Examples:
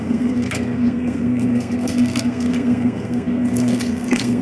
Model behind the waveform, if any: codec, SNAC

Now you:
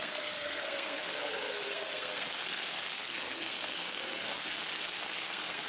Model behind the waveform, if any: codec, SNAC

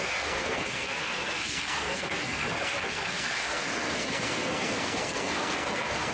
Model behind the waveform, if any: codec, SNAC